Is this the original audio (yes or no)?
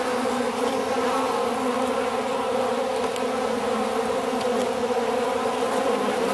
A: yes